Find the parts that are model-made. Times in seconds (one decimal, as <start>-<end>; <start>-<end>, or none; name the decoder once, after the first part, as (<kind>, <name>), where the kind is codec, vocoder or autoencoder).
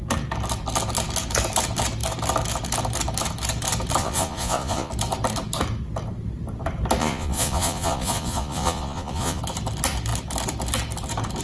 4.0-4.9 (vocoder, Vocos); 7.0-9.4